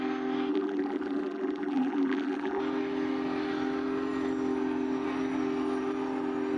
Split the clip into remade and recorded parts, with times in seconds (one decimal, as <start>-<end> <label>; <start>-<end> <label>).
0.0-0.5 recorded; 0.5-2.6 remade; 2.6-6.6 recorded